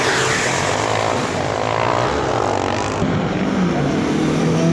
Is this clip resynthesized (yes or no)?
no